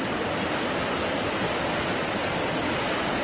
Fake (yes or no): no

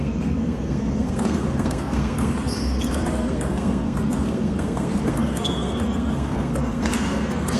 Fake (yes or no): yes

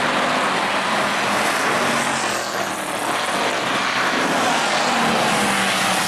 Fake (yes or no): no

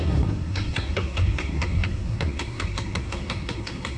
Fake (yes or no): yes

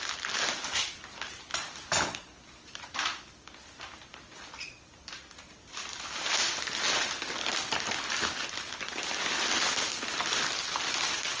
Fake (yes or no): no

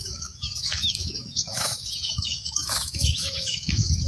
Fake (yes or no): yes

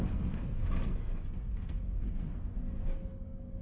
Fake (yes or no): yes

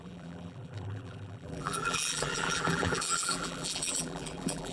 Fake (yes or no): yes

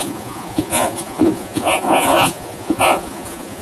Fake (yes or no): yes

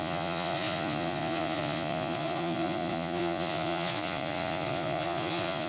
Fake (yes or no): yes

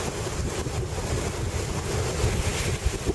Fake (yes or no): no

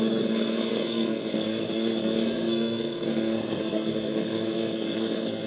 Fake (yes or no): yes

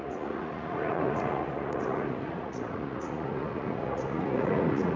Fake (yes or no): yes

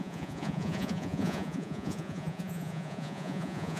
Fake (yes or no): yes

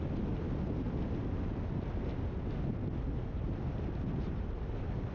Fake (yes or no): no